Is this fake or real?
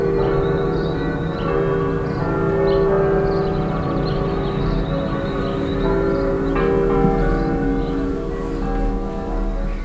real